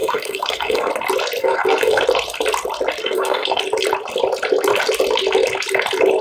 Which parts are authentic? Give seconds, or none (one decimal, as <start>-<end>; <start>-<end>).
0.9-1.4; 2.0-3.0; 3.6-6.2